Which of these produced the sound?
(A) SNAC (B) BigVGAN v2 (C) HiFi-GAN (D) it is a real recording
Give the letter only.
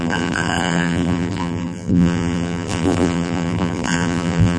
B